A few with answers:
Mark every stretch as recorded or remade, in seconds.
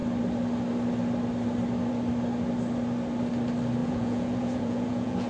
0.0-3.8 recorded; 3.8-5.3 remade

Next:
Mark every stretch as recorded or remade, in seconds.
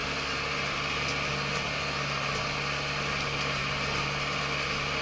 0.0-5.0 recorded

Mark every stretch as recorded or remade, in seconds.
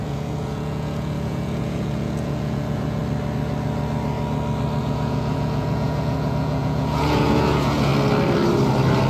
0.0-3.0 remade; 3.0-4.8 recorded; 4.8-7.9 remade; 7.9-9.1 recorded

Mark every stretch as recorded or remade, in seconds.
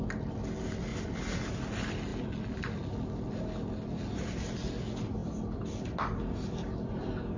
0.0-7.4 recorded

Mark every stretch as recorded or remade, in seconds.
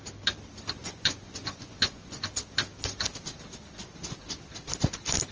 0.0-0.8 recorded; 0.8-2.2 remade; 2.2-5.3 recorded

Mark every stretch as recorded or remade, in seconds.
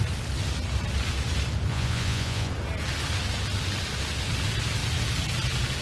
0.0-1.7 recorded; 1.7-2.5 remade; 2.5-5.8 recorded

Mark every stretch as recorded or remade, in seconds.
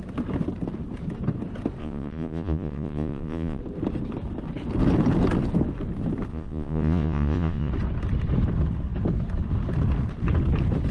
0.0-1.8 recorded; 1.8-3.6 remade; 3.6-6.3 recorded; 6.3-7.7 remade; 7.7-10.9 recorded